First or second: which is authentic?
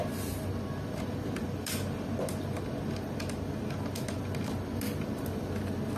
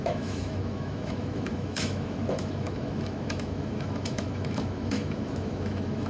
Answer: first